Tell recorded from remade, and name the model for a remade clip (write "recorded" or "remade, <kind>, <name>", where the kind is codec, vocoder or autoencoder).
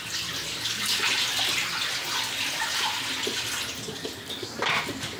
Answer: recorded